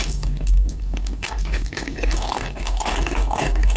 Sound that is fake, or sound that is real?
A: fake